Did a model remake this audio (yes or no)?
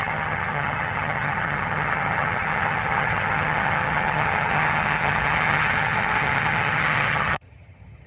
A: yes